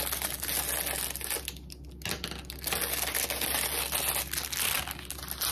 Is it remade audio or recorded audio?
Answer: recorded